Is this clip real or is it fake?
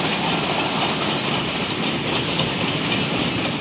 real